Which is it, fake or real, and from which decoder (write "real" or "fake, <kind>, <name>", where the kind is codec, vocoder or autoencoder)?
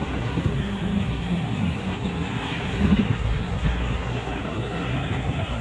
fake, codec, SNAC